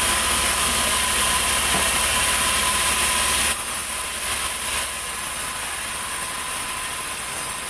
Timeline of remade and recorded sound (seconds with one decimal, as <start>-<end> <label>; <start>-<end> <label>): 0.0-7.7 recorded